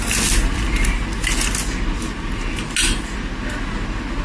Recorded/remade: recorded